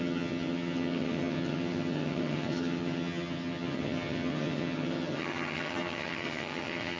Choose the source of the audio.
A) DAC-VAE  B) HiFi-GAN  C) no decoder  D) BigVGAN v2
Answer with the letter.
B